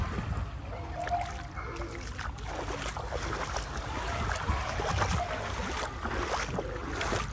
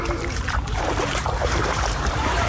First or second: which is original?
first